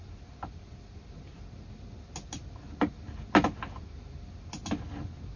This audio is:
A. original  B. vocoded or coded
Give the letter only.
A